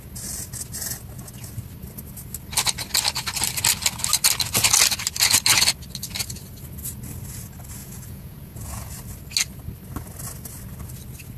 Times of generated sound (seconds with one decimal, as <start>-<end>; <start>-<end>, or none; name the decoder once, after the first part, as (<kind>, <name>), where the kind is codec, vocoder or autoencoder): 7.8-8.9 (vocoder, Vocos)